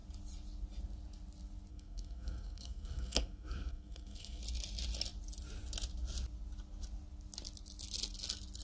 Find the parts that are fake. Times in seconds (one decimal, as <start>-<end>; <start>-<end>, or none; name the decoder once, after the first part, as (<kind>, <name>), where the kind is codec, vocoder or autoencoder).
1.7-4.4 (codec, SNAC)

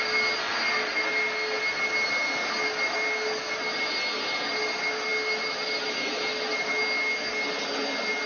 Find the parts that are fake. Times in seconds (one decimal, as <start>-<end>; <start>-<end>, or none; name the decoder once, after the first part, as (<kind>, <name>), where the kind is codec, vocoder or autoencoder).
none

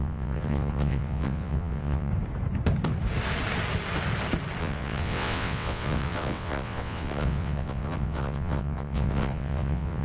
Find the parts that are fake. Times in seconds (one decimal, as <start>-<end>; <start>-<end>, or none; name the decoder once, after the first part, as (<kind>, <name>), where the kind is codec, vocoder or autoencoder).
0.0-2.1 (vocoder, WaveNeXt); 4.6-10.0

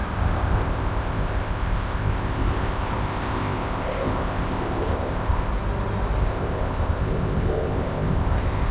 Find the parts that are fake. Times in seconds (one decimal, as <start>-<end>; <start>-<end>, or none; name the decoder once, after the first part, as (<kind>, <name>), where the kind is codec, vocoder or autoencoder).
0.0-5.5 (codec, ZipCodec); 6.2-8.7